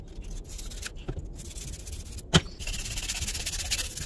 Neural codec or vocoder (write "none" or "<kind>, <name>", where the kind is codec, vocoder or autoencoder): none